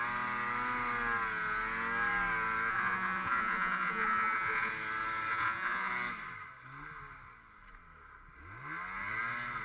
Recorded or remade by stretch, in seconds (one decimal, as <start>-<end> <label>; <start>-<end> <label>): 0.0-2.7 recorded; 2.7-4.7 remade; 4.7-5.3 recorded; 5.3-5.9 remade; 5.9-9.6 recorded